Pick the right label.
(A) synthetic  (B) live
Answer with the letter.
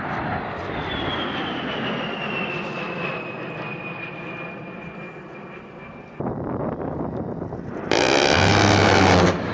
B